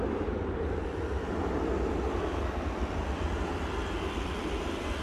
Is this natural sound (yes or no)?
yes